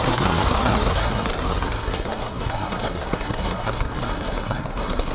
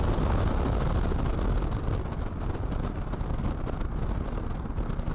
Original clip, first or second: second